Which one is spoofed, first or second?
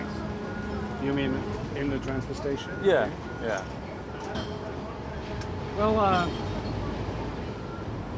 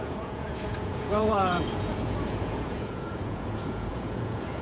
second